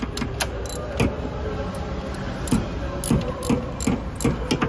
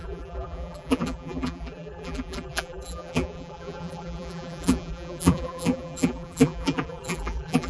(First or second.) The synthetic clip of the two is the second